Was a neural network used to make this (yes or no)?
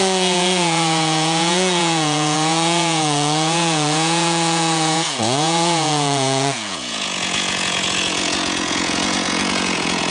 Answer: yes